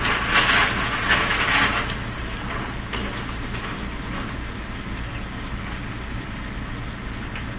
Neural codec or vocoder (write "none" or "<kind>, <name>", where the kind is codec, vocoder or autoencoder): none